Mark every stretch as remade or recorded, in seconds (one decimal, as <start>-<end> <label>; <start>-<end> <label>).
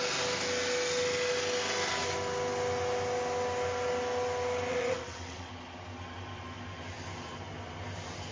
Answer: 0.0-4.7 recorded; 4.7-5.5 remade; 5.5-8.3 recorded